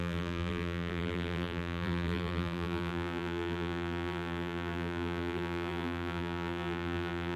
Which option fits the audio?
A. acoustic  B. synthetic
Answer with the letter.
B